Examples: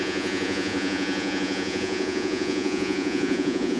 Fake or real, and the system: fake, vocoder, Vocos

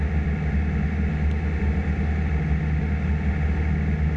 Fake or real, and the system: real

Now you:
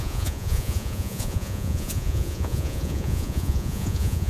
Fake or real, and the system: fake, vocoder, Vocos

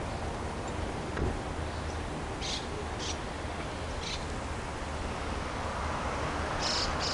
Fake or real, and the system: real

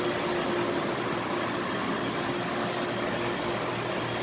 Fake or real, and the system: real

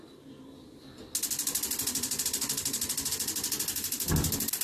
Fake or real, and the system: real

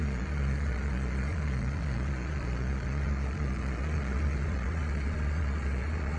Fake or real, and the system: fake, vocoder, Vocos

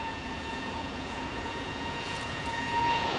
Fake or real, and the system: fake, vocoder, Vocos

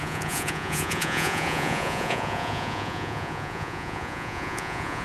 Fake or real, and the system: fake, vocoder, Vocos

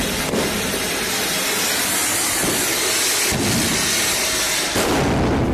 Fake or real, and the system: real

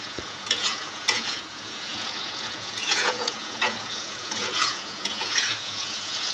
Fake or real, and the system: fake, vocoder, Vocos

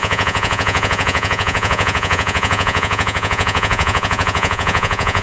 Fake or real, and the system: fake, vocoder, Vocos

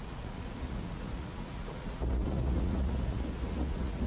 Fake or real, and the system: fake, vocoder, Vocos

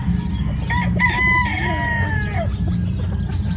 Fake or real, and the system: real